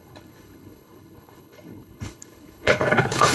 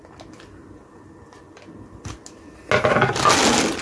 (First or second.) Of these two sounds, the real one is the second